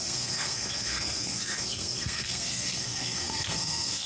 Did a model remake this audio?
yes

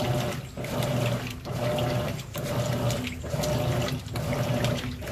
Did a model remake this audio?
no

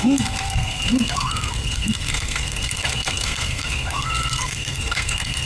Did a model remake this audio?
yes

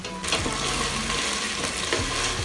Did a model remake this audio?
no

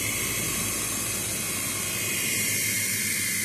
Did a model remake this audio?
no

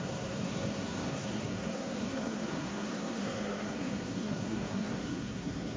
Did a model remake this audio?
yes